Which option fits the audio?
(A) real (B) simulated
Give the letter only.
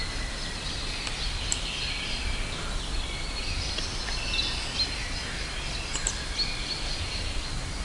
A